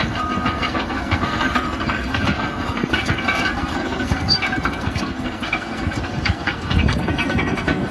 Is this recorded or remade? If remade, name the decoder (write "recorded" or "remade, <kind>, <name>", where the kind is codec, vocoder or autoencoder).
remade, codec, SNAC